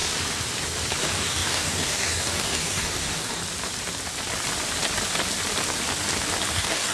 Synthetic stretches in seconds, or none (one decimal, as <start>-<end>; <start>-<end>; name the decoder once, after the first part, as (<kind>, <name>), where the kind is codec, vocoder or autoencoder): 1.0-3.4 (codec, DAC); 6.5-6.9